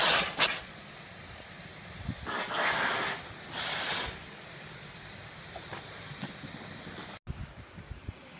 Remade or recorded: recorded